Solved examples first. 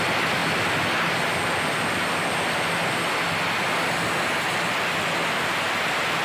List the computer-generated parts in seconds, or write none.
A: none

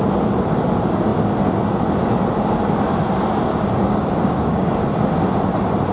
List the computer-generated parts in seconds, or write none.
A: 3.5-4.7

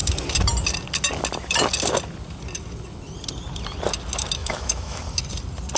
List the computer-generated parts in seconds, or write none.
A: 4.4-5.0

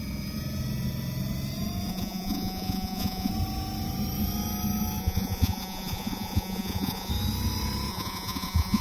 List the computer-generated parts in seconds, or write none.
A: 1.9-3.3; 5.0-7.1; 7.9-8.8

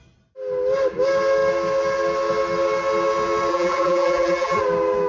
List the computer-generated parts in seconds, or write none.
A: 3.5-4.6